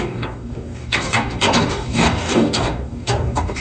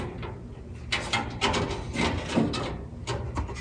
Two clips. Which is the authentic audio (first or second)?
second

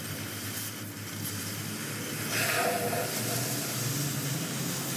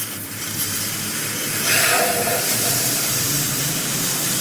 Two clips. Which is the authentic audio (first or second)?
first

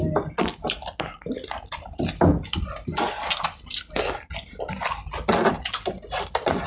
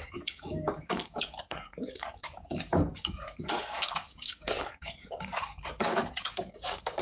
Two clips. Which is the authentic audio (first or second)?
first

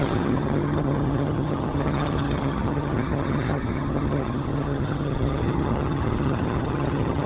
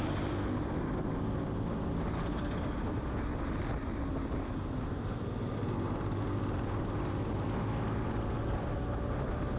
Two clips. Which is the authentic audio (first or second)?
second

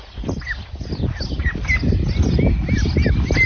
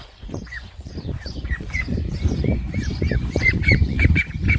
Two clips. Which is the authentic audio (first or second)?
first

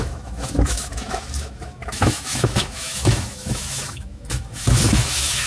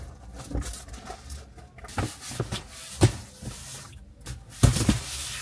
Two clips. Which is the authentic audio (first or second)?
second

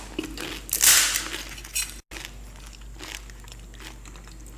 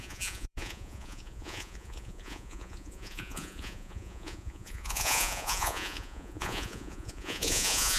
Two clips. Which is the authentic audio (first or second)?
first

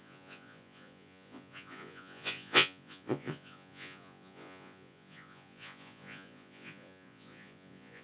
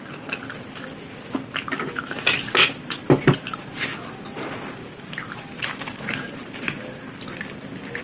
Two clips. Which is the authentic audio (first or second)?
second